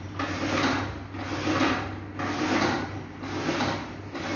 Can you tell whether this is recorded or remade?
recorded